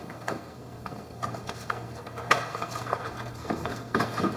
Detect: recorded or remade remade